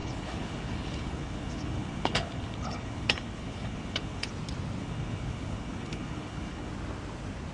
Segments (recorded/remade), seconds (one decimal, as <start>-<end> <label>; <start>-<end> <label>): 0.0-4.3 remade; 4.3-4.8 recorded; 4.8-6.7 remade; 6.7-7.5 recorded